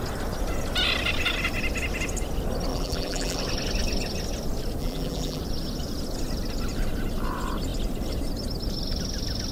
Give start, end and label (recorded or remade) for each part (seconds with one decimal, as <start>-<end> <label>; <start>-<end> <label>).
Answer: 0.0-2.7 recorded; 2.7-3.4 remade; 3.4-4.8 recorded; 4.8-5.4 remade; 5.4-9.5 recorded